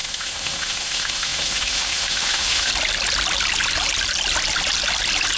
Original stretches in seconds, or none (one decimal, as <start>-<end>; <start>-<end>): 2.7-5.4